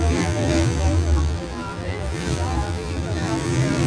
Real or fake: fake